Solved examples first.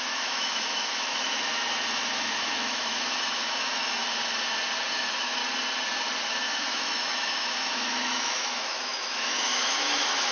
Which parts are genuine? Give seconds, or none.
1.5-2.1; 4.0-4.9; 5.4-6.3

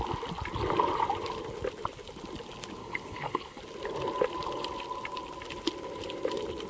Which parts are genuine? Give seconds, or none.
0.0-2.8; 3.6-6.7

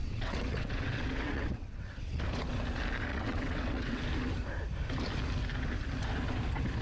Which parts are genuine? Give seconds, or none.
2.2-3.1; 4.0-6.8

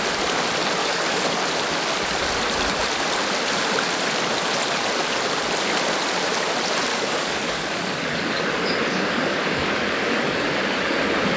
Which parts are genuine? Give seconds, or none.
0.0-0.8; 1.4-6.9; 11.0-11.4

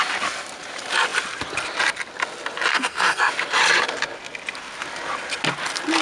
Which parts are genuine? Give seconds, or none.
0.0-2.7; 3.3-6.0

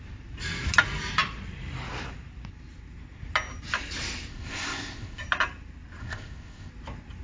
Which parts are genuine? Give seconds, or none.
0.0-4.3; 5.2-6.0; 6.7-7.2

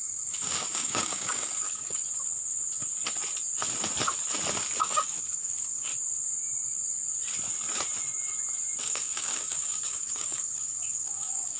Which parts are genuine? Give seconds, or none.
2.0-4.8; 5.9-8.8